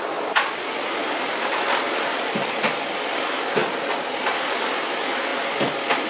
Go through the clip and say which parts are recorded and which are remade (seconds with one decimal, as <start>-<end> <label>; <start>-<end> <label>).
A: 0.0-1.0 recorded; 1.0-2.9 remade; 2.9-6.1 recorded